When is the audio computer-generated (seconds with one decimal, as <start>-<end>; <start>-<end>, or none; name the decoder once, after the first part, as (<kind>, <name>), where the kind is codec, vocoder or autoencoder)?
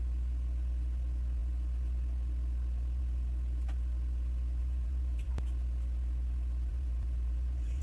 4.6-5.3 (vocoder, BigVGAN v2); 6.7-7.8